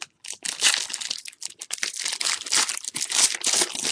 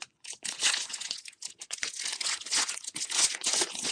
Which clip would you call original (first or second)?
first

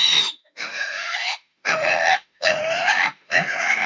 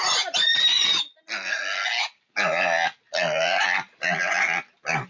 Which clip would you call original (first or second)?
second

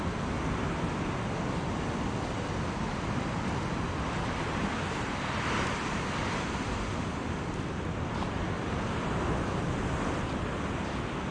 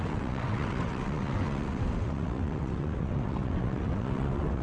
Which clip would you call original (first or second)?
first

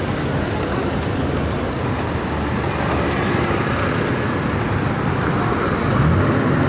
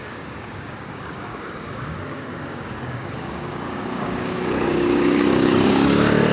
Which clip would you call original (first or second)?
first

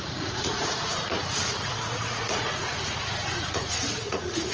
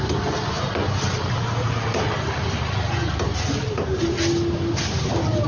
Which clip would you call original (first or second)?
second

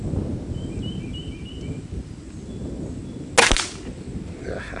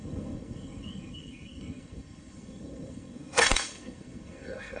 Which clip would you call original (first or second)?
first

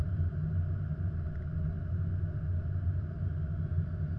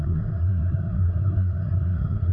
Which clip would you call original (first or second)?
first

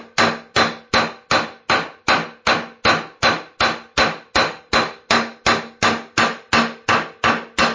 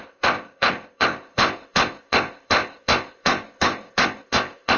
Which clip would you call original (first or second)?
first